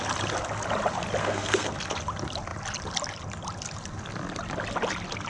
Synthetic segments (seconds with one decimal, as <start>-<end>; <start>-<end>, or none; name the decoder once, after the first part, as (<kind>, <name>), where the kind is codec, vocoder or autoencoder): 1.2-1.7 (codec, SNAC)